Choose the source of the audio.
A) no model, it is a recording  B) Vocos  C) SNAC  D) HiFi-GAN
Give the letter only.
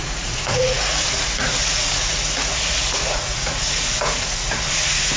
B